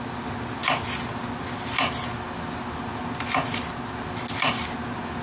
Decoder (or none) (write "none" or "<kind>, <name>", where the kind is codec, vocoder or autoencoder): none